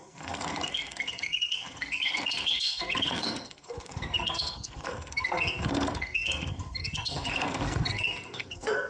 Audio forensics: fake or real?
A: fake